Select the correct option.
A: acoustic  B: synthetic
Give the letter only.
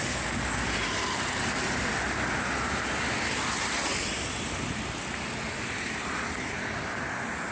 A